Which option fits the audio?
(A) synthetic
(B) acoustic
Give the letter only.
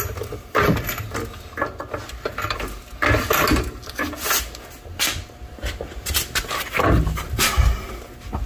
B